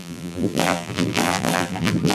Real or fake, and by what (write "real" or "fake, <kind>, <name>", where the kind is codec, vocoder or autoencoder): fake, vocoder, BigVGAN v2